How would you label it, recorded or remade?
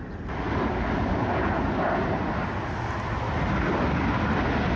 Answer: recorded